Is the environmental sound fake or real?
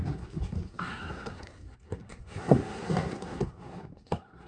fake